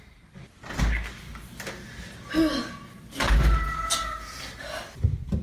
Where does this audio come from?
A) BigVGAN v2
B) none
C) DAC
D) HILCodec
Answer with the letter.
B